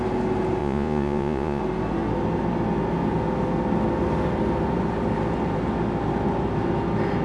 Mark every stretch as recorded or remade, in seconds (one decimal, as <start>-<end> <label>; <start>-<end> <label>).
0.0-0.6 recorded; 0.6-1.6 remade; 1.6-7.2 recorded